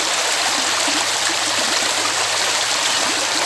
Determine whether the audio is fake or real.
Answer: fake